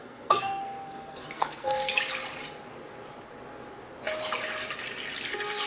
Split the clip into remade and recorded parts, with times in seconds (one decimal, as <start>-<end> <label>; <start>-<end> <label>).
0.0-1.9 remade; 1.9-5.3 recorded; 5.3-5.7 remade